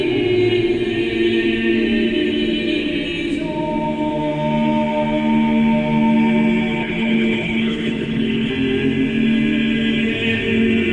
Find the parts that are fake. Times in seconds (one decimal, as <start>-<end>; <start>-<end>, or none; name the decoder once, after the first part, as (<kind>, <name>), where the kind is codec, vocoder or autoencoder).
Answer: 6.8-8.5 (codec, HILCodec)